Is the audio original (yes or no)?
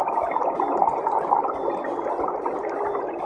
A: yes